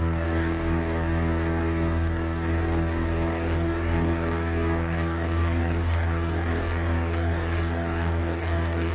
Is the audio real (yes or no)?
no